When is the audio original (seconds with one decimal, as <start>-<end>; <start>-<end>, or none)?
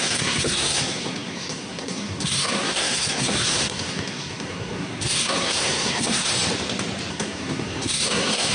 6.3-7.1